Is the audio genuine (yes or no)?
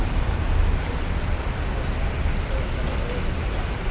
yes